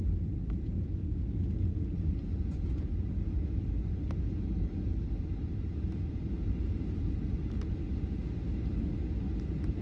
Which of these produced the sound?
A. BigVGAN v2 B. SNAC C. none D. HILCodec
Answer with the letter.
C